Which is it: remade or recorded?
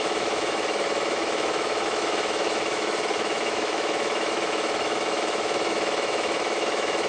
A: remade